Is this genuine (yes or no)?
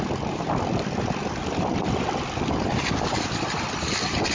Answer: yes